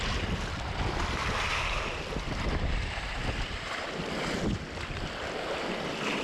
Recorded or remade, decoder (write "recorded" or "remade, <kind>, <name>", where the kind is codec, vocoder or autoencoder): recorded